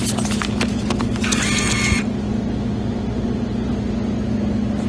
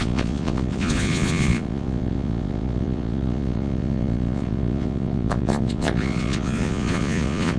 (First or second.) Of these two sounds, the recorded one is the first